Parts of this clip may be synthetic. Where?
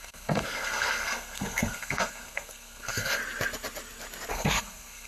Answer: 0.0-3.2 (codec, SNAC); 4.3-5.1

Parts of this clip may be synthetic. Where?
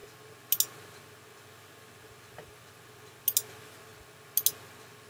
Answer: none